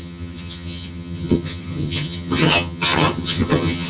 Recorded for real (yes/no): no